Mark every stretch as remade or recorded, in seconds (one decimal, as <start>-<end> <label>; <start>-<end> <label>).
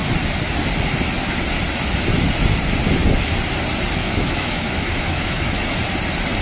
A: 0.0-4.0 recorded; 4.0-5.5 remade; 5.5-6.4 recorded